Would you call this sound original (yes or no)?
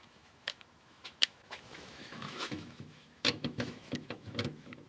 no